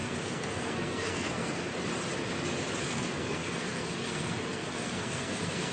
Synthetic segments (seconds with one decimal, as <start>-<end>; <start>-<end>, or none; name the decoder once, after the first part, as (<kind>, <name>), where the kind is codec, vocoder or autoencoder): 0.0-1.7 (codec, SNAC); 2.8-5.7